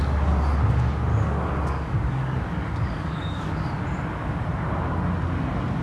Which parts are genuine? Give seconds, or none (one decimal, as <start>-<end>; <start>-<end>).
0.0-1.1; 3.7-5.8